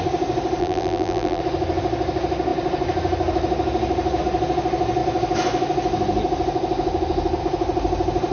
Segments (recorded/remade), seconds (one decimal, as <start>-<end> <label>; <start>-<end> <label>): 0.0-0.6 recorded; 0.6-1.4 remade; 1.4-8.3 recorded